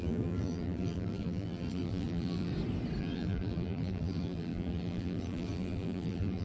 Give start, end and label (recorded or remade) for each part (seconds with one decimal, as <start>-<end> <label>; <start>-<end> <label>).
0.0-2.5 remade; 2.5-3.0 recorded; 3.0-6.4 remade